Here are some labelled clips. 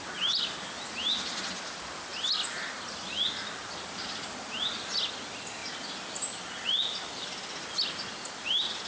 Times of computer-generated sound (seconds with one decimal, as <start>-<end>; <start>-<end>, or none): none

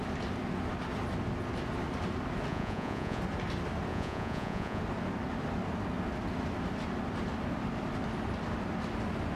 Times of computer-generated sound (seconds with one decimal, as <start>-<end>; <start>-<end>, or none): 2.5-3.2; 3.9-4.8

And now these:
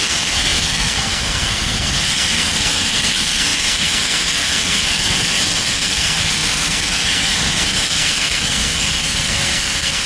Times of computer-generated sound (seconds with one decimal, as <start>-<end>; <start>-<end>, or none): 0.0-10.1

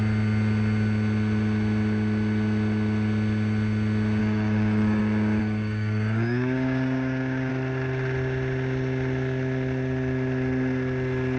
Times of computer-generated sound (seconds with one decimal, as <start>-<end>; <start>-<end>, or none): 4.2-5.0; 5.4-7.5

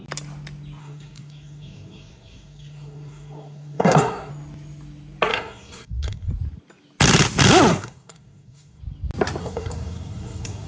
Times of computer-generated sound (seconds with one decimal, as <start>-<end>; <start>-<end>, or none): 0.8-4.3; 5.3-6.3; 7.7-8.8; 9.4-10.7